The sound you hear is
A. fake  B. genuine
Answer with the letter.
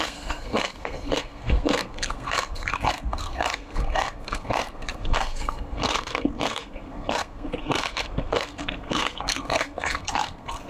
A